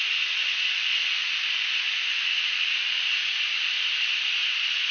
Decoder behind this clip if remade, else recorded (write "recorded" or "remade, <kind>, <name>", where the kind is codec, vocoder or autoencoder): recorded